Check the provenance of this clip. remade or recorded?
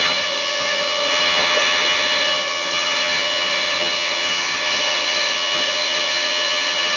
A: remade